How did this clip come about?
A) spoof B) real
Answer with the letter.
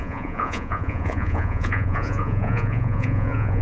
A